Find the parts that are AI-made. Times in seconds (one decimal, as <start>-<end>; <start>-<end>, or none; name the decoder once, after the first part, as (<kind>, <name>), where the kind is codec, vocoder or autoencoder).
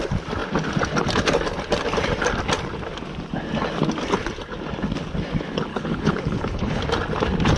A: 5.7-6.8 (codec, HILCodec)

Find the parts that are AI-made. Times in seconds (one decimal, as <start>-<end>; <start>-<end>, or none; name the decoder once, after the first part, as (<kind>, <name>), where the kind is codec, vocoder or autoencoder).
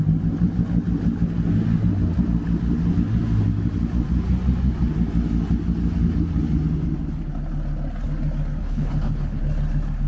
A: 8.6-9.4 (codec, HILCodec)